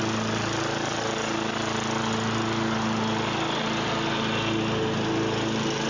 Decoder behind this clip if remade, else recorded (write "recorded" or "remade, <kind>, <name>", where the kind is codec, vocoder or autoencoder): recorded